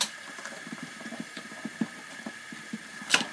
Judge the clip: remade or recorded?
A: remade